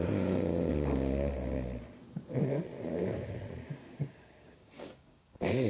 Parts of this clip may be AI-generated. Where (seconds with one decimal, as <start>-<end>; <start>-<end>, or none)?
4.0-5.7